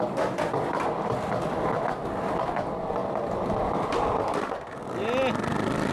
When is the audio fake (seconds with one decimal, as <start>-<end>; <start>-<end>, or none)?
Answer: none